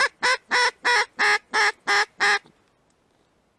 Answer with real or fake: real